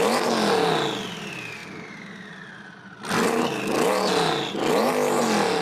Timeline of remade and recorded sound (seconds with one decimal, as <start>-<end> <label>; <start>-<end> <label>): 0.0-5.6 recorded